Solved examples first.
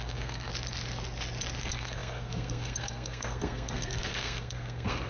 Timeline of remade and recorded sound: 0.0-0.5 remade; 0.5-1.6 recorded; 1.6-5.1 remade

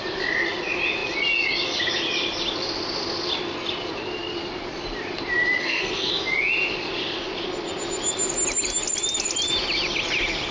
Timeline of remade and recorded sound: 0.0-5.6 recorded; 5.6-6.1 remade; 6.1-10.5 recorded

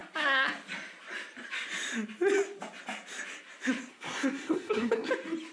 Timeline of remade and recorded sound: 0.0-3.9 recorded; 3.9-5.1 remade; 5.1-5.5 recorded